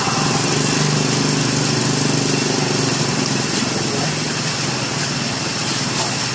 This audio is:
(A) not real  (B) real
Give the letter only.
B